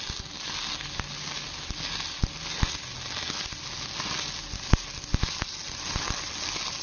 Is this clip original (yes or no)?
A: yes